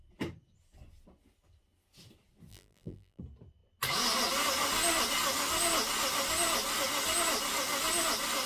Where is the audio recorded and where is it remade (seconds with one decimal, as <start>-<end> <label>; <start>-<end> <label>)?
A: 0.0-2.5 recorded; 2.5-3.2 remade; 3.2-8.5 recorded